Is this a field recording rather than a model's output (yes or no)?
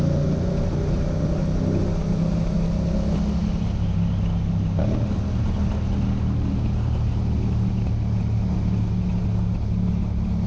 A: yes